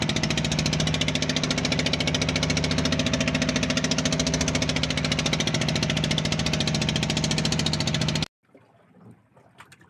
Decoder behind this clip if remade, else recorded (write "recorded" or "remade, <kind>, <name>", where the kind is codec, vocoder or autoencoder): recorded